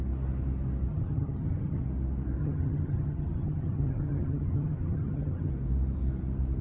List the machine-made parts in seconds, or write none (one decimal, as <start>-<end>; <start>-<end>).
0.9-1.8; 2.4-5.5